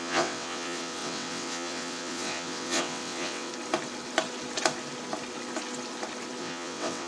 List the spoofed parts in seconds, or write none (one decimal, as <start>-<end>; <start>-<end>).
0.0-3.5; 6.4-7.1